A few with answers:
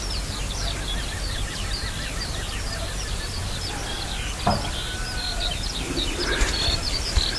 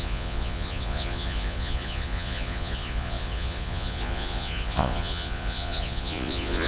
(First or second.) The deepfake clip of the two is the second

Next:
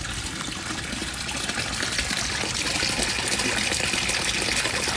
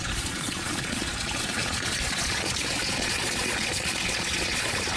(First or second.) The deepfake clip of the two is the second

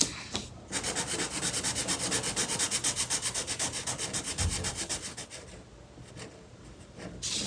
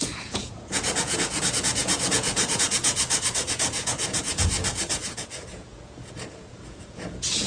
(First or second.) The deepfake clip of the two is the second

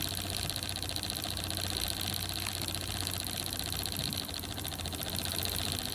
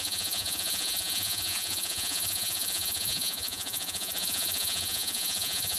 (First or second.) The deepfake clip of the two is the second